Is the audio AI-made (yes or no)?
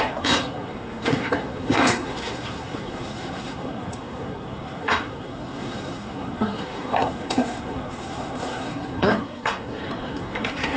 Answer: yes